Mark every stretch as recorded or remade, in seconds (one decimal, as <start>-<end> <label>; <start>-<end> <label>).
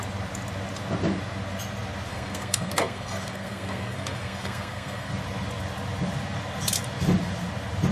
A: 0.0-2.1 recorded; 2.1-5.1 remade; 5.1-7.9 recorded